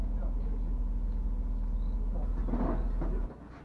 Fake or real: real